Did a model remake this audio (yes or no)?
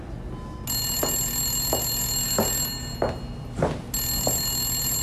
no